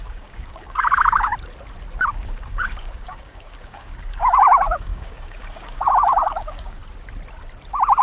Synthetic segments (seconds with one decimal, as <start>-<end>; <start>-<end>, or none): 0.0-1.3; 2.1-6.8

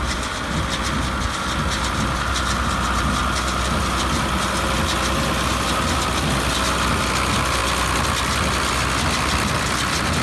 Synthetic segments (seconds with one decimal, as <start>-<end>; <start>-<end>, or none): none

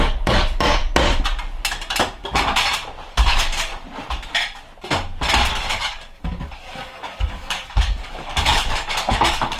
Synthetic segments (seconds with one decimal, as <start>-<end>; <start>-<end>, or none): 0.0-0.8; 3.1-3.7; 5.6-9.6

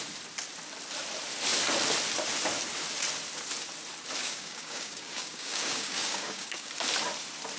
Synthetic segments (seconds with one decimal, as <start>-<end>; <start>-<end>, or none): 4.2-6.7

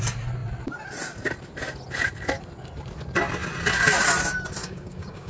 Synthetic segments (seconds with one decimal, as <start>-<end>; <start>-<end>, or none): 4.6-5.3

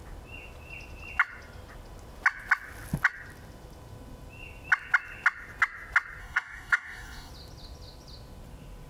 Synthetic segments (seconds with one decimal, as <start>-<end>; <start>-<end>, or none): 6.2-7.3